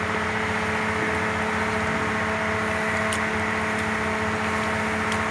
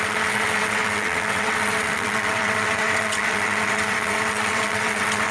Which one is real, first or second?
first